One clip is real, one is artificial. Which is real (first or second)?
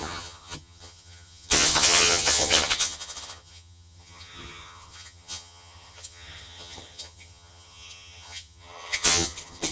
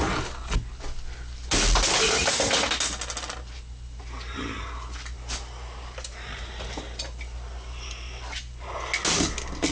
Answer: second